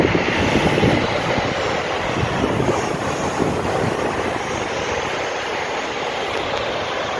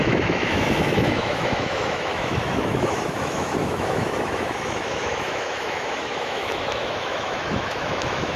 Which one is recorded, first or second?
first